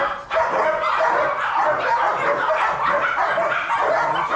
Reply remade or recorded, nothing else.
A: recorded